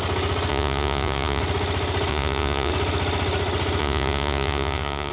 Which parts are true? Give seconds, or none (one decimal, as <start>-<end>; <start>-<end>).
0.0-0.5; 1.4-2.1; 2.7-3.8